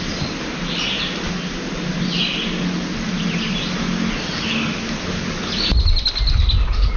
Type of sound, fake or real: real